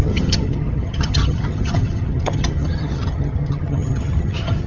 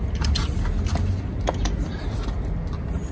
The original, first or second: second